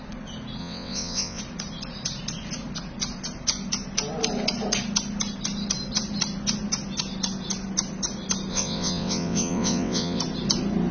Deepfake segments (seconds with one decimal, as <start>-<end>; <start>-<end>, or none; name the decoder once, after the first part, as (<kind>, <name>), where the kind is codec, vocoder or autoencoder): 0.6-1.4 (vocoder, WaveNeXt); 8.5-10.2